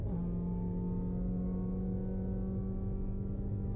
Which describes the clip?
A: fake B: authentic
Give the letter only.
B